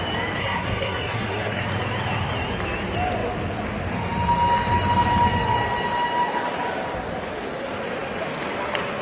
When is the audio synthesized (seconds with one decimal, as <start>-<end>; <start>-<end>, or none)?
0.4-1.6

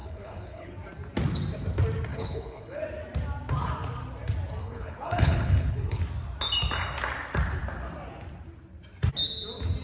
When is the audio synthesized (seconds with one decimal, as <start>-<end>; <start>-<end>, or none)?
0.0-0.7; 2.1-2.8; 4.6-6.0

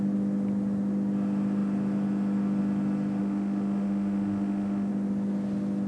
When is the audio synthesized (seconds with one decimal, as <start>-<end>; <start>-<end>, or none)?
3.2-4.9

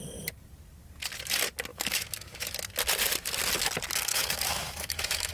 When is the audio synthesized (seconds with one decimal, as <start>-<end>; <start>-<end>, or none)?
1.7-2.5; 4.1-5.3

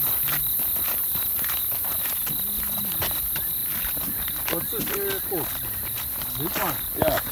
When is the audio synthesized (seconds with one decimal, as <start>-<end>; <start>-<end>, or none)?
none

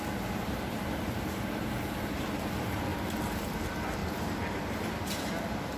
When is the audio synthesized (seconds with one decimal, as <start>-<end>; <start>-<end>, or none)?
2.9-3.5; 4.0-4.9

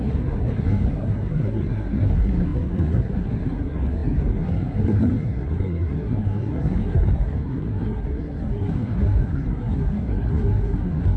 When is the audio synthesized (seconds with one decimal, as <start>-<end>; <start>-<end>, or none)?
0.0-11.2

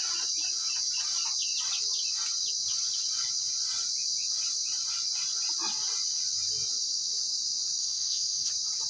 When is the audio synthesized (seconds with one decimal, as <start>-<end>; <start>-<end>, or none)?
7.8-8.5